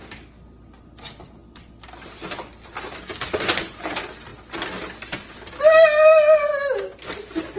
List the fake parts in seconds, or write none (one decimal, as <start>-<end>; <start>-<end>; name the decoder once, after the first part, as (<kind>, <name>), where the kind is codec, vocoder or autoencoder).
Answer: none